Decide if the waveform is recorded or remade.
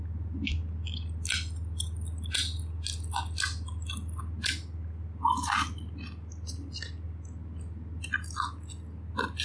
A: recorded